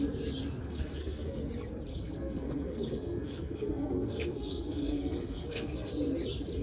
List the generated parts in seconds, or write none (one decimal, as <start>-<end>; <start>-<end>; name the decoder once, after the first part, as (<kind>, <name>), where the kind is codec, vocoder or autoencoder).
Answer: 0.6-1.4 (codec, SNAC); 1.9-5.9